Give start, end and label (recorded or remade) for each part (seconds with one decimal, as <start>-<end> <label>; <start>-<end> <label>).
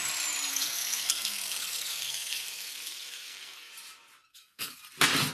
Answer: 0.0-0.5 recorded; 0.5-3.7 remade; 3.7-4.3 recorded; 4.3-4.8 remade; 4.8-5.3 recorded